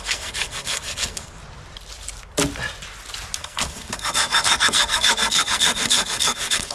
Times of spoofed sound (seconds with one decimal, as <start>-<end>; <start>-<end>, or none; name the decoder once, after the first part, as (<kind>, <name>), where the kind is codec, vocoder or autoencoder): 0.0-1.4 (codec, SNAC); 3.4-6.7